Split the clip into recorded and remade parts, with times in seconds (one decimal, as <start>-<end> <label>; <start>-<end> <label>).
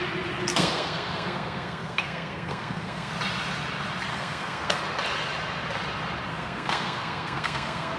0.0-0.5 recorded; 0.5-3.1 remade; 3.1-4.1 recorded; 4.1-4.8 remade; 4.8-6.3 recorded; 6.3-8.0 remade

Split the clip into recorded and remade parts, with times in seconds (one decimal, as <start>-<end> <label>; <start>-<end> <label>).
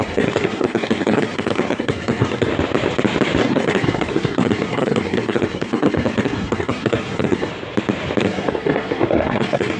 0.0-2.5 remade; 2.5-3.4 recorded; 3.4-7.5 remade; 7.5-8.2 recorded; 8.2-9.8 remade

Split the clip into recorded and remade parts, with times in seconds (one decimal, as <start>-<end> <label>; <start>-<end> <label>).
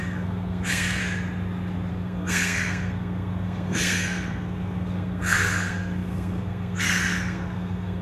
0.0-1.0 remade; 1.0-1.9 recorded; 1.9-8.0 remade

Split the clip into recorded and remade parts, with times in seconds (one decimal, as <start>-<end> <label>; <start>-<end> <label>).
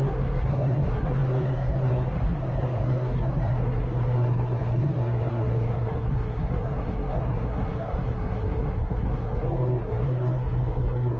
0.0-11.2 remade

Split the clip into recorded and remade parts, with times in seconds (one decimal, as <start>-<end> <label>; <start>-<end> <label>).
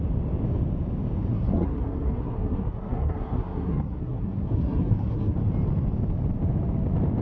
0.0-1.3 recorded; 1.3-5.4 remade; 5.4-7.2 recorded